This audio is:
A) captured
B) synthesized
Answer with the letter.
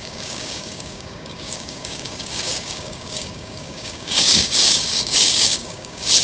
B